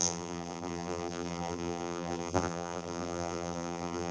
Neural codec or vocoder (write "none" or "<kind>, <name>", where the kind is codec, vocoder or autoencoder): vocoder, BigVGAN v2